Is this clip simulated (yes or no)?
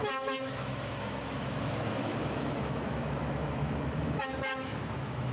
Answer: yes